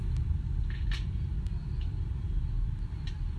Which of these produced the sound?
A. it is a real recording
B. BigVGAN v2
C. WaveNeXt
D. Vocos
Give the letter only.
B